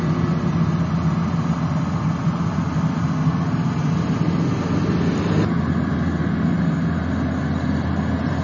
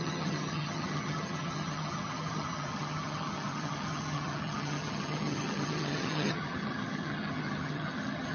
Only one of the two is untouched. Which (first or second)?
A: first